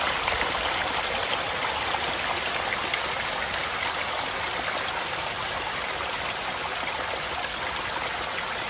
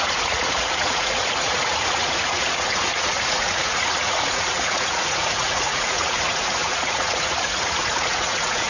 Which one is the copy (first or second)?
second